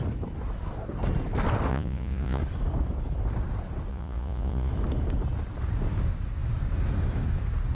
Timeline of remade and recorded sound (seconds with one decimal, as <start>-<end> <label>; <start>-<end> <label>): 0.0-1.7 recorded; 1.7-2.4 remade; 2.4-3.9 recorded; 3.9-4.7 remade; 4.7-7.7 recorded